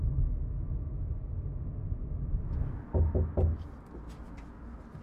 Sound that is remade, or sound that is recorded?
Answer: recorded